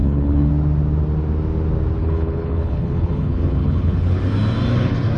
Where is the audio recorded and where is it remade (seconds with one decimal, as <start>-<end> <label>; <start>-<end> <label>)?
0.0-0.5 remade; 0.5-2.0 recorded; 2.0-4.2 remade; 4.2-5.2 recorded